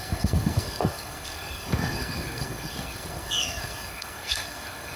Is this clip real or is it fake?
fake